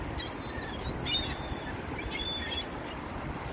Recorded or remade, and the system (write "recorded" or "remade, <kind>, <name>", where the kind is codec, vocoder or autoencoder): recorded